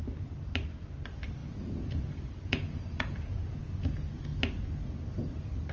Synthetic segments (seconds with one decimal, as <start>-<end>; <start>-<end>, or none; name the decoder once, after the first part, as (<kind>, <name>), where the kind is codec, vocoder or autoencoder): 1.4-3.9 (vocoder, Vocos)